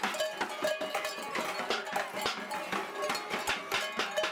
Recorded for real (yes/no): yes